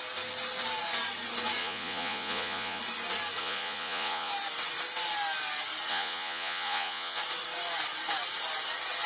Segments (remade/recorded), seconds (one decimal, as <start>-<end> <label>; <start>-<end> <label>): 0.0-1.6 recorded; 1.6-2.8 remade; 2.8-3.4 recorded; 3.4-4.3 remade; 4.3-5.9 recorded; 5.9-7.2 remade; 7.2-9.1 recorded